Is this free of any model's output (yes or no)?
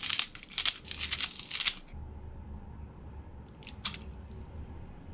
yes